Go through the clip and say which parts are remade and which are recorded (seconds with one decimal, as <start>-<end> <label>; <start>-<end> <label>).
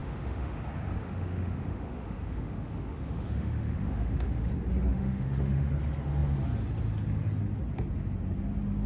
0.0-0.6 remade; 0.6-1.0 recorded; 1.0-4.5 remade; 4.5-4.9 recorded; 4.9-5.7 remade; 5.7-8.9 recorded